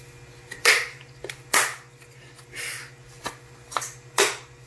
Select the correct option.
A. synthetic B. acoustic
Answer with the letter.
B